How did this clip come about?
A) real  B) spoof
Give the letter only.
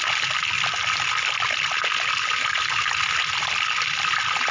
A